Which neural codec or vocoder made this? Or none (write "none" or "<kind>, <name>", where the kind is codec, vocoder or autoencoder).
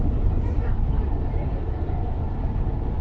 vocoder, BigVGAN v2